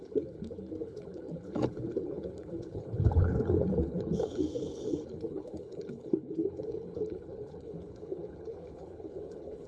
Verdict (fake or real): fake